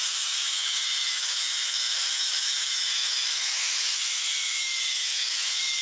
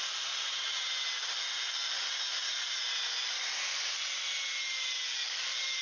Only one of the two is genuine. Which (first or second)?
second